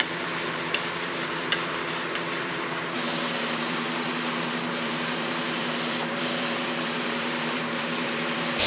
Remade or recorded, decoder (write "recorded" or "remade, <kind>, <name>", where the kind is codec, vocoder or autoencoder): remade, vocoder, BigVGAN v2